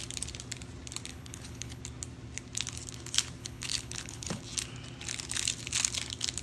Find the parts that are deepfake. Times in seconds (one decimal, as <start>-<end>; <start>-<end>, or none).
1.1-1.8; 3.4-4.4